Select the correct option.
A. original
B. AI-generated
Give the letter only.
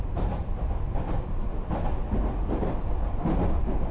A